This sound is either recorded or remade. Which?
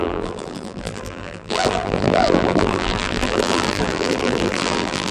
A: remade